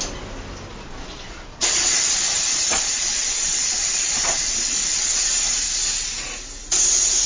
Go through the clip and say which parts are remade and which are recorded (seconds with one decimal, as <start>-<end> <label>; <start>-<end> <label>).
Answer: 0.0-0.7 recorded; 0.7-5.1 remade; 5.1-7.3 recorded